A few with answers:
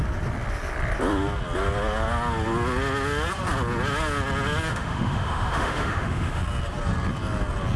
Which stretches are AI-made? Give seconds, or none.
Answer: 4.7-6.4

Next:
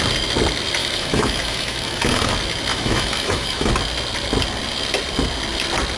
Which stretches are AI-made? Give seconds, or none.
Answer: 0.8-2.3; 2.7-3.7

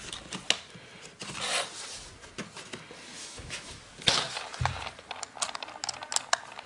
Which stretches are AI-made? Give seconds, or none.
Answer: 3.2-3.8